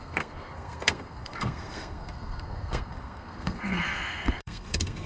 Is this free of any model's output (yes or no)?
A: no